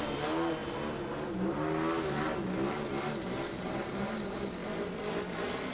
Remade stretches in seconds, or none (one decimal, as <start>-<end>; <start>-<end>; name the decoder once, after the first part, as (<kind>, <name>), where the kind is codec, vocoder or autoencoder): none